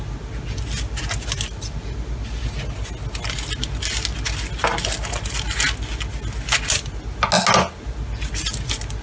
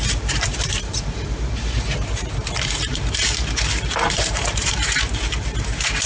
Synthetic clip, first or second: second